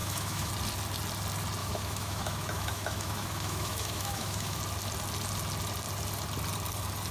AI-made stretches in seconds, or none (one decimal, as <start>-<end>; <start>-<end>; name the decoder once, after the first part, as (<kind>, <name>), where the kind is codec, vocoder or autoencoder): 0.0-0.5 (autoencoder, DAC-VAE); 1.6-4.6